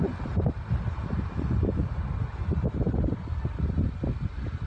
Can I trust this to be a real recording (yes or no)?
yes